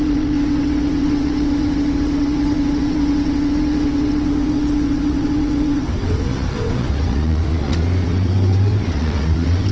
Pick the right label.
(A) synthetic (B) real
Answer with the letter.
A